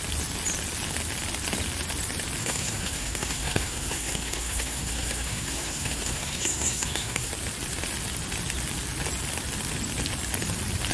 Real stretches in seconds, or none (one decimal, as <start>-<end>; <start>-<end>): 0.0-2.4; 7.3-10.9

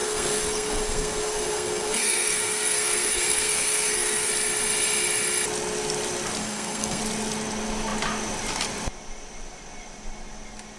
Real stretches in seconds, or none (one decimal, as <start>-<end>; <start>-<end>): 4.3-6.4; 7.0-10.8

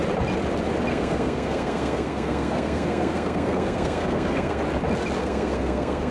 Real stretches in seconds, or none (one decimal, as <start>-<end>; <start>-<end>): 0.0-0.9; 4.6-5.2

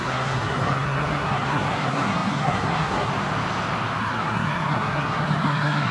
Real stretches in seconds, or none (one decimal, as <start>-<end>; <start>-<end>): 3.1-4.0

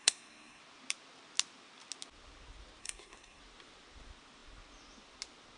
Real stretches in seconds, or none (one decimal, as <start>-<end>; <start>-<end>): 0.6-2.8; 3.4-5.6

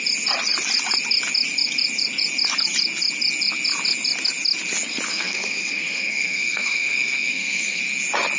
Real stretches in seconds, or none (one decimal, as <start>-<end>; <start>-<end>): 0.0-5.1; 7.8-8.4